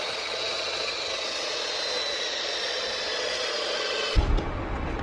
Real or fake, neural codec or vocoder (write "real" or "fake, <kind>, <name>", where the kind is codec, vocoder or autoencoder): fake, vocoder, Vocos